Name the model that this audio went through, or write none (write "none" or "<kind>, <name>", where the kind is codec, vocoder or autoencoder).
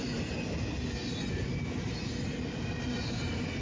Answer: none